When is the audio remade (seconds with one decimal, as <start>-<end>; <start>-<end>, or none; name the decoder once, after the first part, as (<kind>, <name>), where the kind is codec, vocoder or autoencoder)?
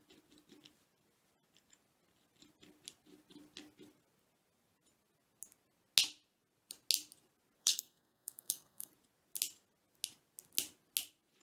7.6-8.9 (codec, SNAC)